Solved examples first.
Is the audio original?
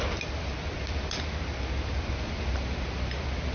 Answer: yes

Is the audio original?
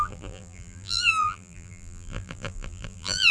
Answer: no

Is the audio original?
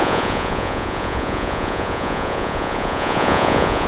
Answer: no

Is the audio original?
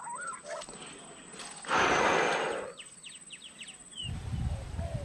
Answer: yes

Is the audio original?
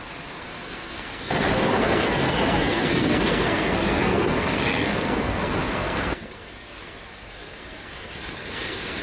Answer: no